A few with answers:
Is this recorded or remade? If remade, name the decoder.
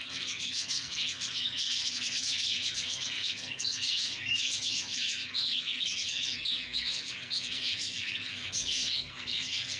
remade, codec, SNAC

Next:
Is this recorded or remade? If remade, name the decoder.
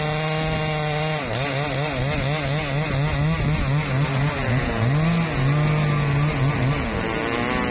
recorded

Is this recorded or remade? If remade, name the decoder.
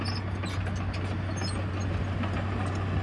recorded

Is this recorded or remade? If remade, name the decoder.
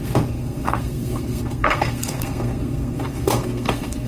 remade, codec, SNAC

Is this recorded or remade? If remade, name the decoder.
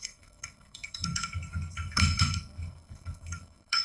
remade, codec, SNAC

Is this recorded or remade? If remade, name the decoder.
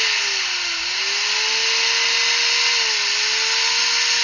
recorded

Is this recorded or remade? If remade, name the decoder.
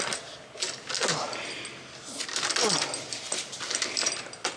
recorded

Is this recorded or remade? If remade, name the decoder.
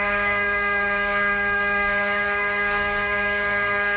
remade, codec, SNAC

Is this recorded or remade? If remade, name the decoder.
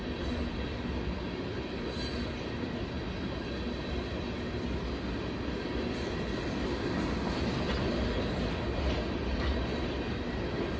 recorded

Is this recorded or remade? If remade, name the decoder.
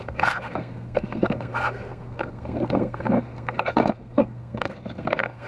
remade, codec, SNAC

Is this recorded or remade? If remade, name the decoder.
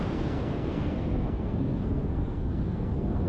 remade, codec, SNAC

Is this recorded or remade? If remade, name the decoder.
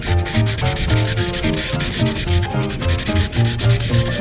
recorded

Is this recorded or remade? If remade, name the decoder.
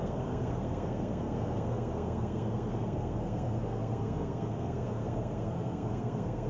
remade, codec, SNAC